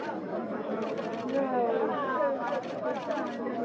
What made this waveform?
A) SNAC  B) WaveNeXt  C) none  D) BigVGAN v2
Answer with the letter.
D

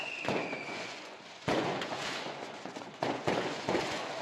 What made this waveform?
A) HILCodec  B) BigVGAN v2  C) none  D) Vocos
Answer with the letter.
D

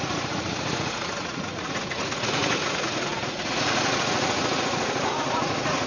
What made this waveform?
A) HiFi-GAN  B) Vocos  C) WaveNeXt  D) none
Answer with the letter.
B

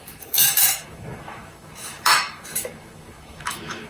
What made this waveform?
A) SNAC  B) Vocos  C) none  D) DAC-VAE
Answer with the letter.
D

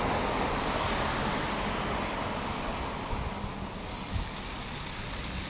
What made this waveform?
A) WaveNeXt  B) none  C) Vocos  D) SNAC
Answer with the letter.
B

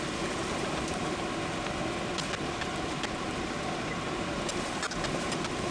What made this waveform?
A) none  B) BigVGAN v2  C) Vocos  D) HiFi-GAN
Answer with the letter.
A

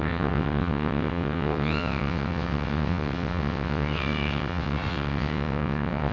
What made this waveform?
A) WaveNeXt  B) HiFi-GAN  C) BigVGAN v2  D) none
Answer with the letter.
A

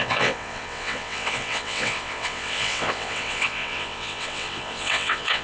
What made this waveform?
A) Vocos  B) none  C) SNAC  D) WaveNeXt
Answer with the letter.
D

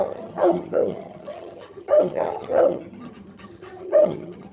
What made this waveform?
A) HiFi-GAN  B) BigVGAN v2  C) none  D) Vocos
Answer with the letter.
A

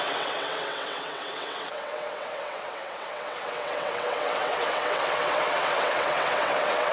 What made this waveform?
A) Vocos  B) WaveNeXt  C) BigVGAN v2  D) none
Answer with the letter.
B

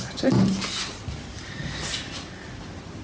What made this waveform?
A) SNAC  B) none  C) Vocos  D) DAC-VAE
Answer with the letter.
B